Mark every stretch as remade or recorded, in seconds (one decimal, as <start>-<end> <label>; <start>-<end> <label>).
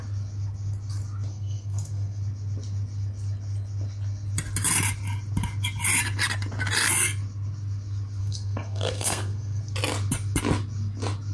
0.0-1.3 recorded; 1.3-2.2 remade; 2.2-8.2 recorded; 8.2-9.6 remade; 9.6-11.3 recorded